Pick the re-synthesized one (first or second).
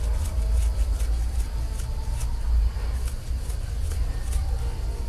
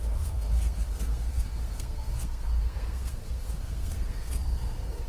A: second